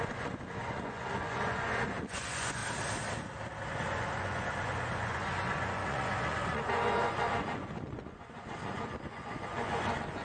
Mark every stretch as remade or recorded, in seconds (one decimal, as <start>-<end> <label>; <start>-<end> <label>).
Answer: 0.0-2.6 remade; 2.6-3.7 recorded; 3.7-10.2 remade